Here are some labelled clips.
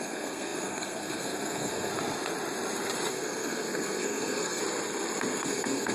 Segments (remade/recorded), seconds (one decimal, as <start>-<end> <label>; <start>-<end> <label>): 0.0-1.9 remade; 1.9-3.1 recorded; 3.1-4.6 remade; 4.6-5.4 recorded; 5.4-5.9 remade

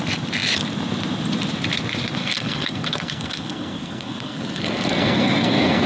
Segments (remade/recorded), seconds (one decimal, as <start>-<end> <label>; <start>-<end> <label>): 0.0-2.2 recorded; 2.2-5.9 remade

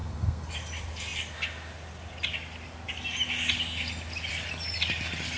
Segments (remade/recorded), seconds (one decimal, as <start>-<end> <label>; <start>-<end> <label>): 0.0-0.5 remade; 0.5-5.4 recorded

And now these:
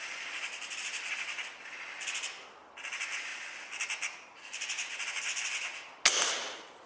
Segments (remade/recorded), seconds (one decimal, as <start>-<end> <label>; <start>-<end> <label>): 0.0-6.9 recorded

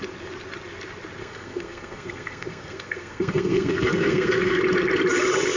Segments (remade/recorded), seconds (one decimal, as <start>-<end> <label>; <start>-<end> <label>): 0.0-1.2 recorded; 1.2-4.6 remade; 4.6-5.6 recorded

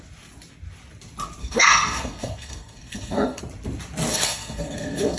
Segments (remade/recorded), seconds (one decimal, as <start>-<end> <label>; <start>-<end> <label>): 0.0-1.4 recorded; 1.4-3.4 remade; 3.4-4.1 recorded; 4.1-5.2 remade

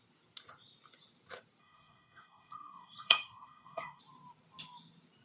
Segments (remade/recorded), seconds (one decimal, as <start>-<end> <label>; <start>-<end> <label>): 0.0-1.6 recorded; 1.6-4.0 remade; 4.0-5.2 recorded